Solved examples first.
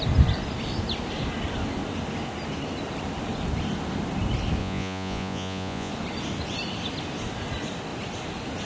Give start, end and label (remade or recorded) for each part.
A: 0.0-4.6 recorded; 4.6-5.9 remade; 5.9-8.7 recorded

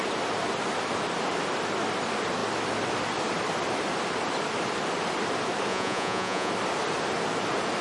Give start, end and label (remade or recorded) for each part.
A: 0.0-5.7 recorded; 5.7-6.5 remade; 6.5-7.8 recorded

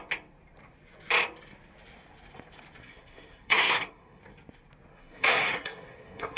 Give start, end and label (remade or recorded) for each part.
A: 0.0-2.8 recorded; 2.8-4.2 remade; 4.2-4.9 recorded; 4.9-6.4 remade

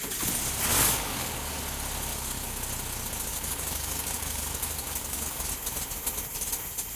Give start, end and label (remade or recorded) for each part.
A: 0.0-0.7 recorded; 0.7-1.6 remade; 1.6-2.1 recorded; 2.1-2.7 remade; 2.7-3.3 recorded; 3.3-5.5 remade; 5.5-7.0 recorded

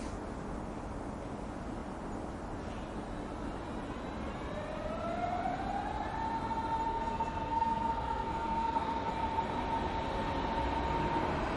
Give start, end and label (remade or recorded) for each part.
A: 0.0-6.9 recorded; 6.9-9.1 remade; 9.1-11.6 recorded

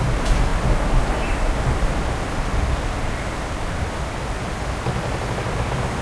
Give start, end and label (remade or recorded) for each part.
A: 0.0-6.0 recorded

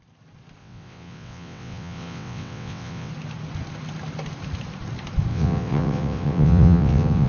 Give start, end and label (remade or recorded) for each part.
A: 0.0-0.6 recorded; 0.6-3.1 remade; 3.1-5.3 recorded; 5.3-7.3 remade